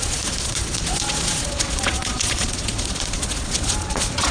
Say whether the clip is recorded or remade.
remade